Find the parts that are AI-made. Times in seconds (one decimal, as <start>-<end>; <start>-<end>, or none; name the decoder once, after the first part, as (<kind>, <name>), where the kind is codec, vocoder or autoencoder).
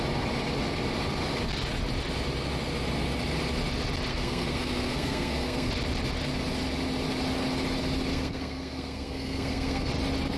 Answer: 4.1-5.7 (codec, SNAC); 8.1-9.9